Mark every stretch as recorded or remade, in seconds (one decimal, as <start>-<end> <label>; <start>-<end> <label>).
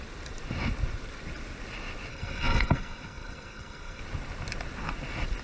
0.0-2.1 recorded; 2.1-4.0 remade; 4.0-5.4 recorded